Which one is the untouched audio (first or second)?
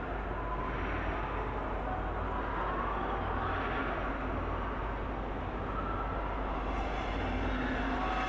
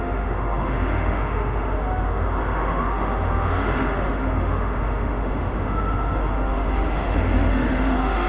first